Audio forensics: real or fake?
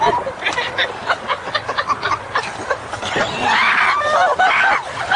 real